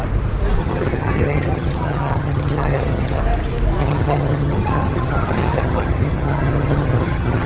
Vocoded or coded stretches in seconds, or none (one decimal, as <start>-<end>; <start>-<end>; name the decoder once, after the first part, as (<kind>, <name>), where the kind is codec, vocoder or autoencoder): 0.6-3.2 (vocoder, HiFi-GAN); 3.8-7.5